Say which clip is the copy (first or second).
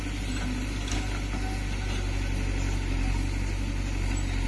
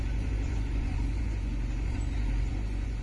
second